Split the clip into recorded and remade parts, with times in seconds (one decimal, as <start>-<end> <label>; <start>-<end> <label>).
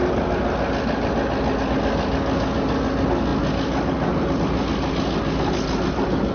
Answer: 0.0-6.3 recorded